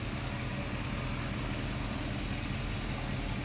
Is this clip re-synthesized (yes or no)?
no